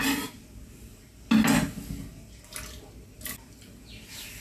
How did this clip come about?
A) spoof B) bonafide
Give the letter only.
B